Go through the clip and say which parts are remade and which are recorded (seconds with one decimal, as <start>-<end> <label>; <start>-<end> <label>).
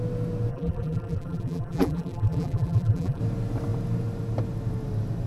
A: 0.0-0.5 recorded; 0.5-3.2 remade; 3.2-5.3 recorded